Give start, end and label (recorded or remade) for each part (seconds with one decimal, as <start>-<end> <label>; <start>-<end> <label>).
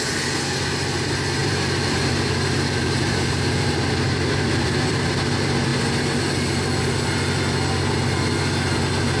0.0-1.4 recorded; 1.4-4.9 remade; 4.9-9.2 recorded